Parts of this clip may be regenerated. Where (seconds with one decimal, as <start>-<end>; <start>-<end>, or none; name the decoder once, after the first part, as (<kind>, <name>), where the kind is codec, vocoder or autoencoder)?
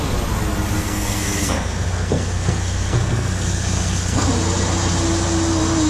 0.8-4.3 (codec, SNAC)